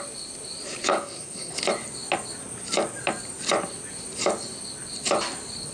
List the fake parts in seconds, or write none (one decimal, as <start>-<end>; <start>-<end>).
0.9-1.6